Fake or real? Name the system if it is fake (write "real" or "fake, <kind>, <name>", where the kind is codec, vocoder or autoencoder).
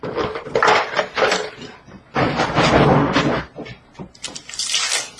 real